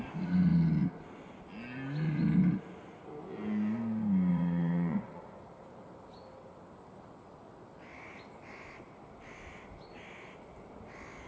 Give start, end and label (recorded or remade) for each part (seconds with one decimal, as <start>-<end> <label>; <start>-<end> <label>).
0.0-4.3 recorded; 4.3-5.2 remade; 5.2-11.3 recorded